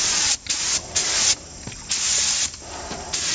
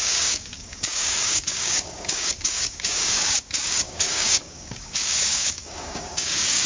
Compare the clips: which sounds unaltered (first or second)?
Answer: first